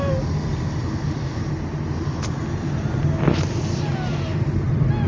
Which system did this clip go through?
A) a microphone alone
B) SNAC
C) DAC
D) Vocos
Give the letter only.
A